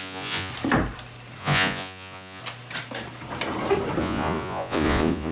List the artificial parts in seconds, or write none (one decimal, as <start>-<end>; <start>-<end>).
0.0-0.5; 1.4-2.4; 4.0-5.3